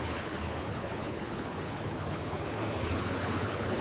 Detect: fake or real fake